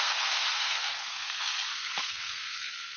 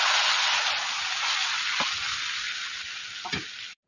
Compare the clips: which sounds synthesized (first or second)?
first